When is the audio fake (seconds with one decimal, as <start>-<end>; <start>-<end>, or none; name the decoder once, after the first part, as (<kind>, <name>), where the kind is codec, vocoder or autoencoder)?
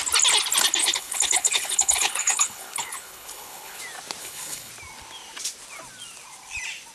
0.8-3.8 (codec, HILCodec); 4.2-4.7